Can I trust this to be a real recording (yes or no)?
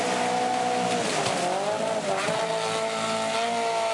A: yes